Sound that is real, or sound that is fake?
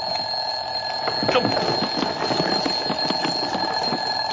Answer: real